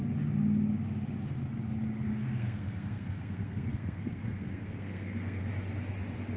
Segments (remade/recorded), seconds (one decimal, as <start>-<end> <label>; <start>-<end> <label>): 0.0-2.1 recorded; 2.1-5.4 remade; 5.4-6.4 recorded